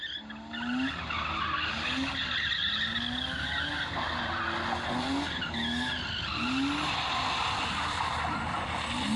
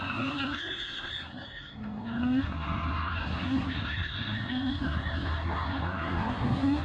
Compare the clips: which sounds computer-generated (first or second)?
second